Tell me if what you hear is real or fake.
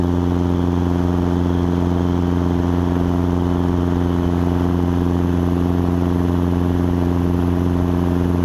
real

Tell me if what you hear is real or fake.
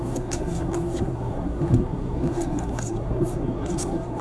fake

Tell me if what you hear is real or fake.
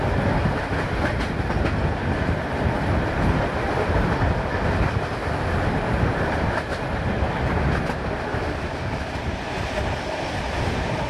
real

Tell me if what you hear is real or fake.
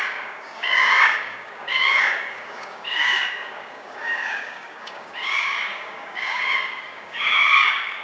fake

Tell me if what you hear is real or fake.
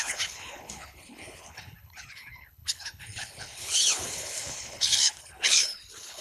fake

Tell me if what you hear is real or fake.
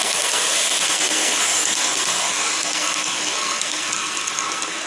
fake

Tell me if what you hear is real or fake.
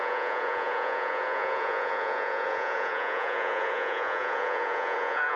fake